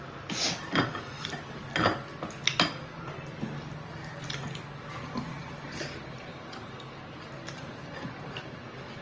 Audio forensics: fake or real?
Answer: real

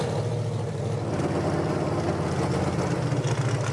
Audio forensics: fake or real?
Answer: real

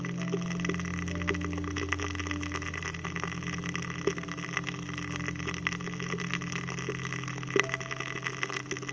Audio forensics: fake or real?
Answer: real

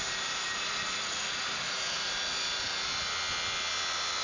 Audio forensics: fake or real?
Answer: real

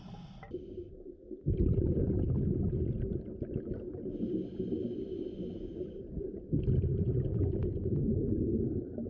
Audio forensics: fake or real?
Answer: real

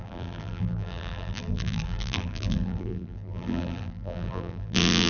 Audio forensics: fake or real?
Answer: fake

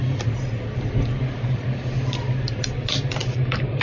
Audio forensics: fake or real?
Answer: real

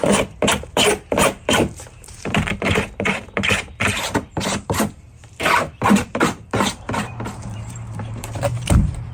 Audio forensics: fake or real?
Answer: fake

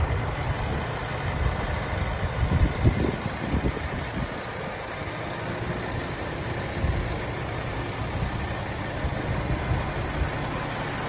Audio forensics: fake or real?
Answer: real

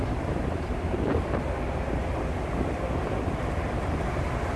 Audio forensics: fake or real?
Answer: real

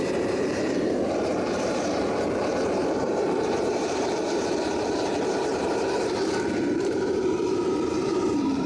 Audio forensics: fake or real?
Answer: fake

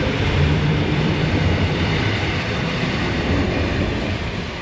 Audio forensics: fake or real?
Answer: fake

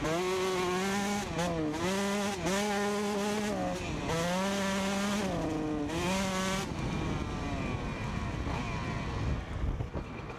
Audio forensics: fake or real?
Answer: real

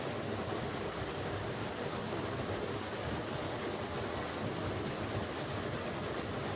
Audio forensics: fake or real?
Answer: real